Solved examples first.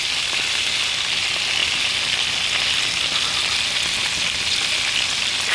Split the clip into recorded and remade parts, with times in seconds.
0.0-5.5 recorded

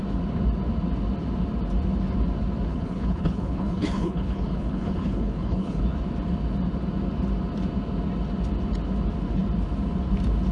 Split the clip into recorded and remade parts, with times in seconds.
0.0-2.7 recorded; 2.7-5.8 remade; 5.8-10.5 recorded

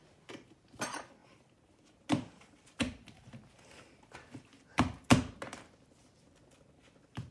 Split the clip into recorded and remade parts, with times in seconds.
0.0-7.3 recorded

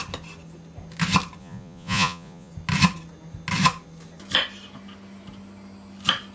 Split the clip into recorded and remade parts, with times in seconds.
0.0-1.4 recorded; 1.4-2.5 remade; 2.5-6.3 recorded

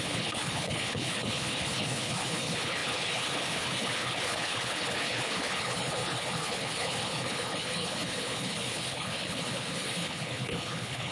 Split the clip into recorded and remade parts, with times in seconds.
0.0-11.1 remade

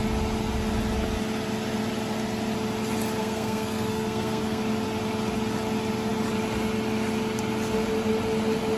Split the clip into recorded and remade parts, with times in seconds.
0.0-3.2 recorded; 3.2-4.6 remade; 4.6-8.8 recorded